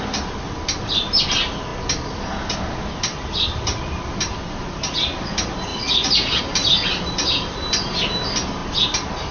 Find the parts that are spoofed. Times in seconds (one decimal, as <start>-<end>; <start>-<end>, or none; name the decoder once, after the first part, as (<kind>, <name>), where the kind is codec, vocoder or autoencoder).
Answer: 5.7-6.4 (vocoder, Vocos)